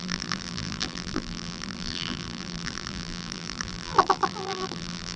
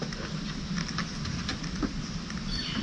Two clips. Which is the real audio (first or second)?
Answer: second